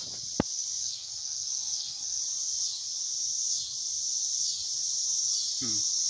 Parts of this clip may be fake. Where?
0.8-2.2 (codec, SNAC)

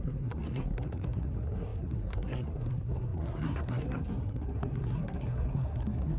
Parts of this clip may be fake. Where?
0.0-6.2 (codec, SNAC)

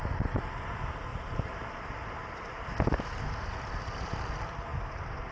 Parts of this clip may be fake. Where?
1.1-4.3 (vocoder, BigVGAN v2)

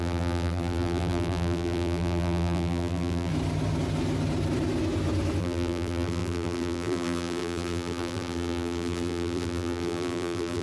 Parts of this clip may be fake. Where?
0.0-3.3 (vocoder, BigVGAN v2); 5.4-10.6